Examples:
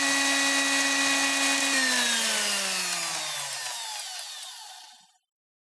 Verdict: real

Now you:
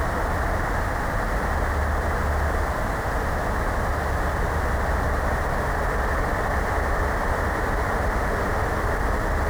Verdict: real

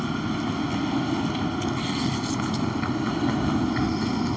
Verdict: real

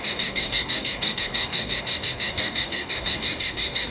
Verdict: fake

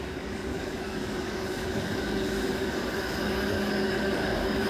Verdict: fake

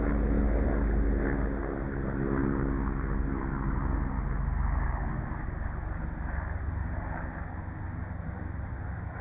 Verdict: real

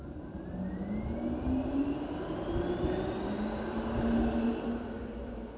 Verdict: real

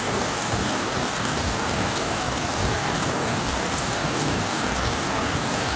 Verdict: fake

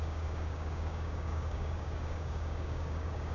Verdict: fake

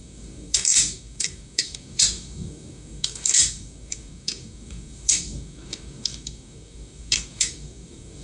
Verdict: fake